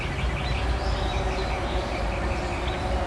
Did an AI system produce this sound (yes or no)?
yes